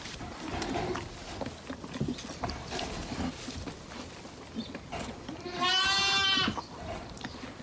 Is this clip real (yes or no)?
yes